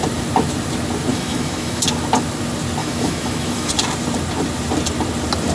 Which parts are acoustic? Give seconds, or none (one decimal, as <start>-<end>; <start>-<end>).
0.0-1.1; 1.8-2.8; 3.7-5.5